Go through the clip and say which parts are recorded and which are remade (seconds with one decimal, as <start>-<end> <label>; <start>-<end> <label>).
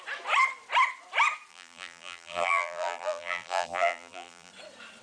0.0-1.5 recorded; 1.5-4.5 remade; 4.5-5.0 recorded